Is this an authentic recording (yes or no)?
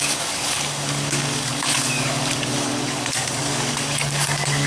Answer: no